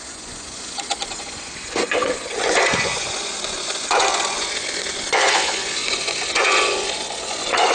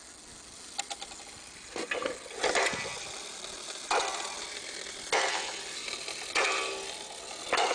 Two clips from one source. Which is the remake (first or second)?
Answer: first